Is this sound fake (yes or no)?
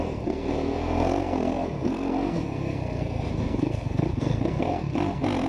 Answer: yes